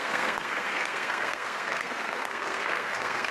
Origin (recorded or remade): remade